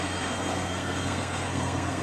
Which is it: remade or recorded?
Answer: remade